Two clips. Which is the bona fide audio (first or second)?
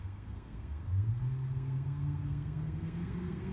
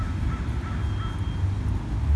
second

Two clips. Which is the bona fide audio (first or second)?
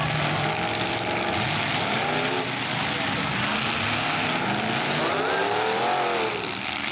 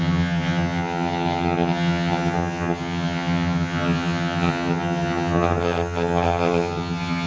first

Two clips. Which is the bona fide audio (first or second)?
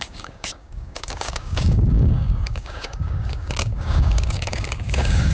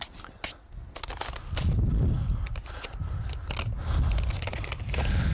second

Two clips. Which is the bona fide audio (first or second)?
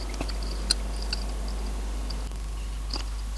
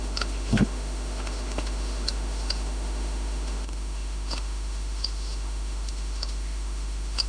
first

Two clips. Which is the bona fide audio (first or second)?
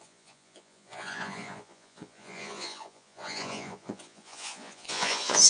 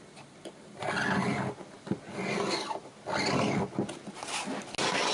second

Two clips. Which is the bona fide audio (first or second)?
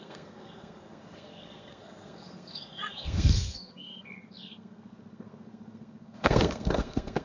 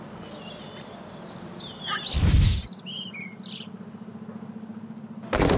second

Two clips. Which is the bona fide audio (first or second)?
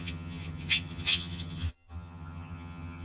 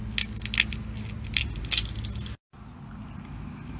second